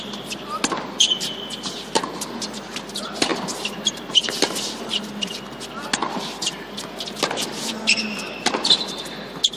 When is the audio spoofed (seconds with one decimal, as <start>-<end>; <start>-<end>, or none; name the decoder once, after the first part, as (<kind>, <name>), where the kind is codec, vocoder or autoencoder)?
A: 6.0-6.5 (vocoder, BigVGAN v2); 8.0-9.1